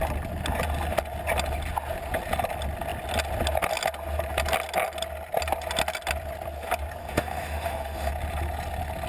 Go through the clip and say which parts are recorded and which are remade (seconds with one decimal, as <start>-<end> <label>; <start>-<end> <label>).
0.0-7.0 recorded; 7.0-8.1 remade; 8.1-9.1 recorded